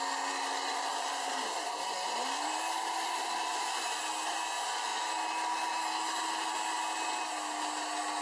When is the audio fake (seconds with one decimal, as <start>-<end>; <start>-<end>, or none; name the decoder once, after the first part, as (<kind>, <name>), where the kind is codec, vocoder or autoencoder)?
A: 0.9-4.0 (vocoder, BigVGAN v2)